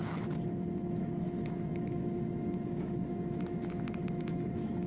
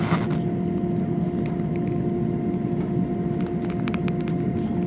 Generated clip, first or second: first